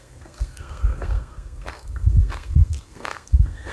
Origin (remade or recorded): remade